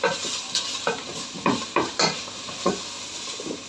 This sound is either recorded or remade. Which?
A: recorded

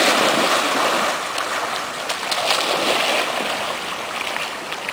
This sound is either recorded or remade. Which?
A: recorded